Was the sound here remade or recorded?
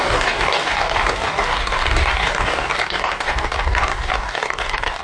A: remade